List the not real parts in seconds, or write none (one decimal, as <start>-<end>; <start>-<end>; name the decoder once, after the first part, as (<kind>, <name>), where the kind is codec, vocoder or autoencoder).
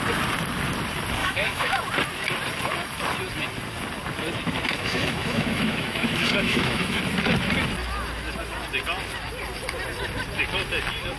1.2-1.8 (autoencoder, DAC-VAE); 4.7-7.0